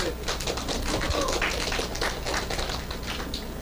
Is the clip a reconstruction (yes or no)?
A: no